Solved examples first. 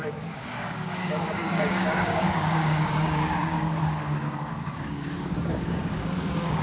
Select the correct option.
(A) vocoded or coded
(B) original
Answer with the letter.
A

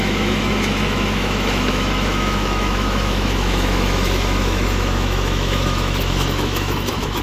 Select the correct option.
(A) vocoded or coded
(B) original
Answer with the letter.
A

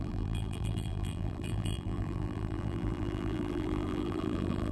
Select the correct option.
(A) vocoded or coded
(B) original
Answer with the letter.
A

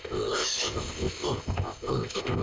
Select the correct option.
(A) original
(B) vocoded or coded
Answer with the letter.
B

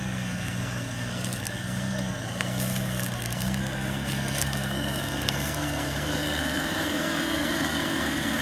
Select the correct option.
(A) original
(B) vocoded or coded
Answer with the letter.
B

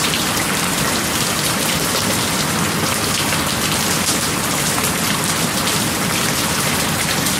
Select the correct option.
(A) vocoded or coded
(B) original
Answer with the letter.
B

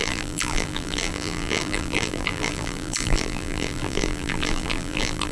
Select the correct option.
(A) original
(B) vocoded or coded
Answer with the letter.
B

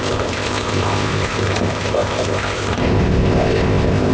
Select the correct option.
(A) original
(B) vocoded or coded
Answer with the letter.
B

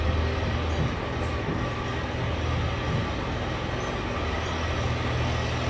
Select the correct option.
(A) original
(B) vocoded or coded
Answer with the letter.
A